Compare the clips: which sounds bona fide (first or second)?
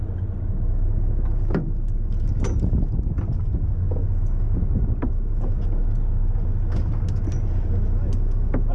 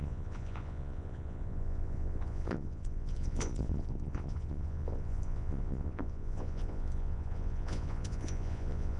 first